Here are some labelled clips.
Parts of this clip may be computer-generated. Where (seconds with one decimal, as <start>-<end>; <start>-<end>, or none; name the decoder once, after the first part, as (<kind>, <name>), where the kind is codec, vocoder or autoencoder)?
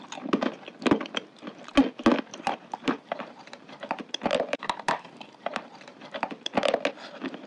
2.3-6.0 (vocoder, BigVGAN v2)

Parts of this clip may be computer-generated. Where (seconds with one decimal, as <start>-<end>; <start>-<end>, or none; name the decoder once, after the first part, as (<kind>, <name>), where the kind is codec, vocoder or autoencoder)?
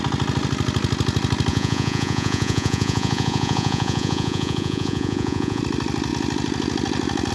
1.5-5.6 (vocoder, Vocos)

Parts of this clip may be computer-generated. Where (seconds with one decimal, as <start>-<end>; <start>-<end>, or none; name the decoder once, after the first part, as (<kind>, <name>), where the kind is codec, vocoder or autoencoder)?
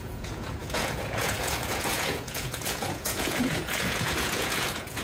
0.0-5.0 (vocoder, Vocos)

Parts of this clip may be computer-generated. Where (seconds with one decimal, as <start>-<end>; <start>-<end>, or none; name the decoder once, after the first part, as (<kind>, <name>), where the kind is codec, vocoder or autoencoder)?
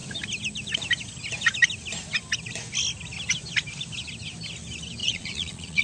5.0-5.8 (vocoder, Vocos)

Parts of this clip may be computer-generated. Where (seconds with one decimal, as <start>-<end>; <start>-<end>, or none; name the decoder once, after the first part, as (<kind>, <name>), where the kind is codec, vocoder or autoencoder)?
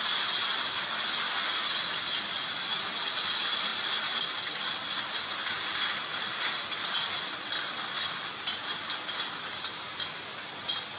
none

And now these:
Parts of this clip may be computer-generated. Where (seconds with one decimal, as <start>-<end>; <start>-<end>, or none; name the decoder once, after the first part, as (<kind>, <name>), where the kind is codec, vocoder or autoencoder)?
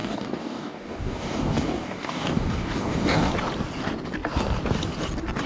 0.0-3.3 (codec, DAC)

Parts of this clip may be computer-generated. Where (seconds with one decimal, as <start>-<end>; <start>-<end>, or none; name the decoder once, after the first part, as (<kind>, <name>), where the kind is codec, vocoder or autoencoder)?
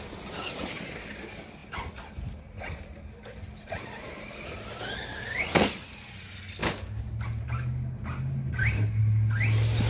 none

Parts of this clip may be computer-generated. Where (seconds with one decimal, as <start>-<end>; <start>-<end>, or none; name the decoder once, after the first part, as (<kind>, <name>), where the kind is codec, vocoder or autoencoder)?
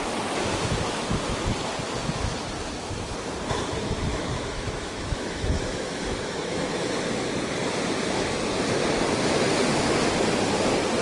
4.1-6.9 (autoencoder, DAC-VAE)